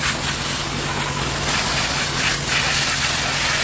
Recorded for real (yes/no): yes